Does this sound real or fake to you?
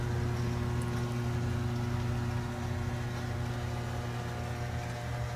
real